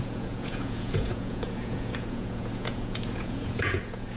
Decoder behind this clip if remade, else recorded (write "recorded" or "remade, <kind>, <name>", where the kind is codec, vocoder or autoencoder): remade, vocoder, Vocos